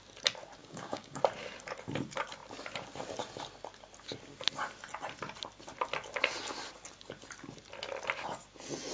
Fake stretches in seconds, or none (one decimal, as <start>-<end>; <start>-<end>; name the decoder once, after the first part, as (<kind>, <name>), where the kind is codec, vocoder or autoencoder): 0.6-1.2 (codec, DAC)